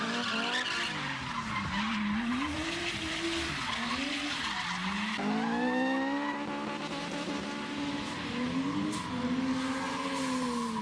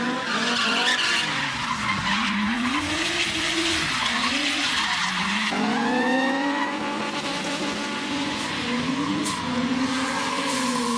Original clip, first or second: first